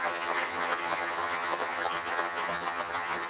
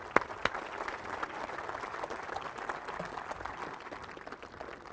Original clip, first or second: second